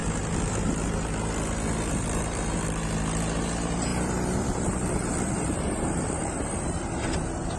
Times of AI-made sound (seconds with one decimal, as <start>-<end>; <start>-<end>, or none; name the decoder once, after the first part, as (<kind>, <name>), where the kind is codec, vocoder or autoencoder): 0.0-0.9 (vocoder, BigVGAN v2); 3.9-6.8